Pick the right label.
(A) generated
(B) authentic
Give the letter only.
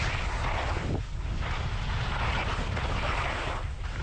B